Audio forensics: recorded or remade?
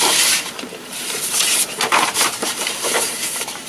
remade